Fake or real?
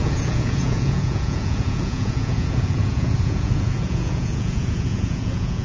fake